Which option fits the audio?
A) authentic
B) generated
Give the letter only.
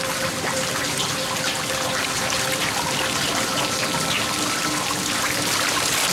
A